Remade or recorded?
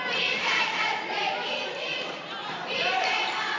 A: recorded